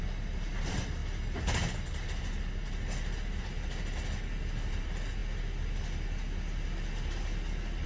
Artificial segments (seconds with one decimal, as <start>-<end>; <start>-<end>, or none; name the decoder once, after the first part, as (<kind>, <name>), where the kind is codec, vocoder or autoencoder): none